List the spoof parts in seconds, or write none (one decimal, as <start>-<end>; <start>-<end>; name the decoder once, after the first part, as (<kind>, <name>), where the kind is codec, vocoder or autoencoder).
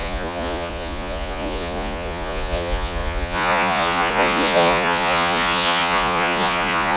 0.0-7.0 (vocoder, Vocos)